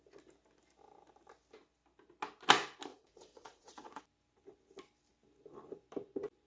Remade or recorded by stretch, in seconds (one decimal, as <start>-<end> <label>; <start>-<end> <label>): 0.0-2.9 recorded; 2.9-4.0 remade; 4.0-6.5 recorded